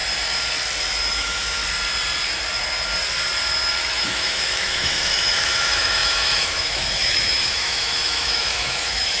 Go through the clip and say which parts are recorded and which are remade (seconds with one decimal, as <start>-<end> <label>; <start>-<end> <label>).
0.0-1.1 recorded; 1.1-1.6 remade; 1.6-3.9 recorded; 3.9-9.2 remade